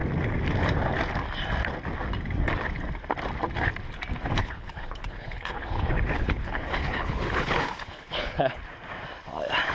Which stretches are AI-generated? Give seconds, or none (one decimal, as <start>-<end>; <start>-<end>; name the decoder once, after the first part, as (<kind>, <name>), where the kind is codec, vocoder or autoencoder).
4.4-8.6 (codec, HILCodec)